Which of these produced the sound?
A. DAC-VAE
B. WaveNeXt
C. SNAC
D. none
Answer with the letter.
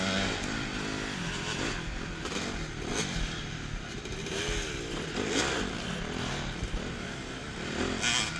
D